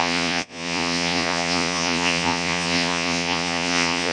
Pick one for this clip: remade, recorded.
remade